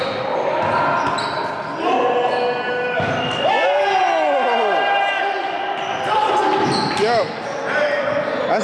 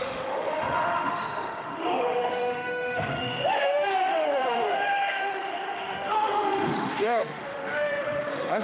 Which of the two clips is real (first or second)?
first